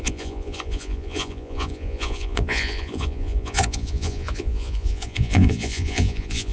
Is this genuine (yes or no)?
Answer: no